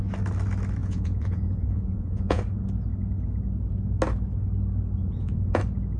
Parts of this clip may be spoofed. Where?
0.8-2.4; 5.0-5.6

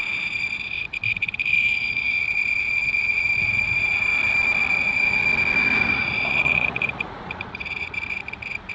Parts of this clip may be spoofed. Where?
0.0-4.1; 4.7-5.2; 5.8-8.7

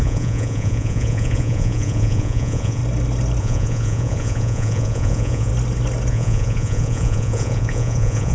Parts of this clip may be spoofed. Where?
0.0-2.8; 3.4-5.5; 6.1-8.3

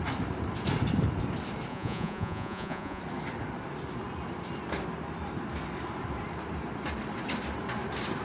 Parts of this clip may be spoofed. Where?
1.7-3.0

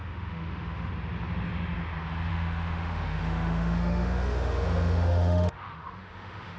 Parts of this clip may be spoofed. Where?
0.0-0.9; 2.3-6.6

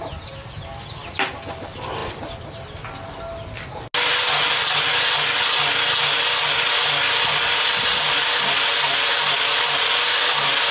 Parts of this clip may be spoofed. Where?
none